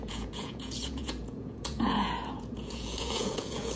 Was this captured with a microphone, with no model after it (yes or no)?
no